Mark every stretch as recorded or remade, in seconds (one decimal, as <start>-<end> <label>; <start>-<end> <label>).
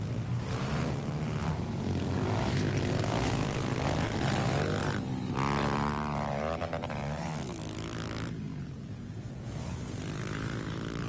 0.0-8.5 recorded; 8.5-10.0 remade; 10.0-11.1 recorded